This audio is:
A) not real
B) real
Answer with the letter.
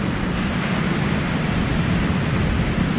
B